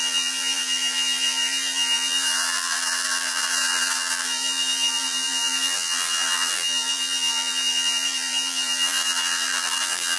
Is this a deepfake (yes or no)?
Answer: yes